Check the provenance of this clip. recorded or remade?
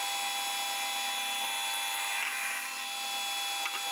recorded